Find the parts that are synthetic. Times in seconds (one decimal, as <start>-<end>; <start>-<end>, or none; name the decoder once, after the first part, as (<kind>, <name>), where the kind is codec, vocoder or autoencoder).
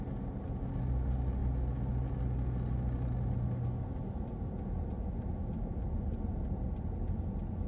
none